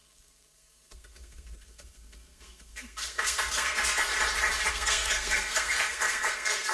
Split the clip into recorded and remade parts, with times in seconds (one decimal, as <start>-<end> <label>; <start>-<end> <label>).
0.0-4.1 remade; 4.1-4.7 recorded; 4.7-6.7 remade